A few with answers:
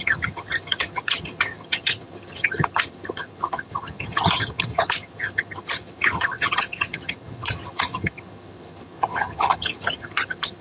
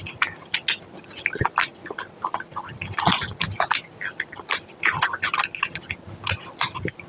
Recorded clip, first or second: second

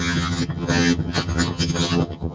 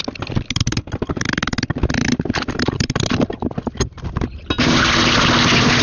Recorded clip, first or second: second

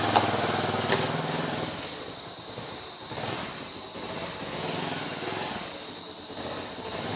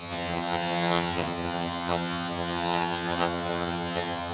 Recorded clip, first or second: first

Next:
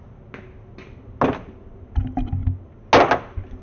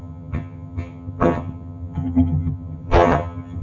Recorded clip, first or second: first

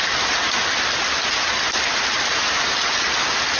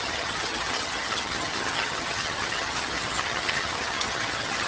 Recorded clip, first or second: first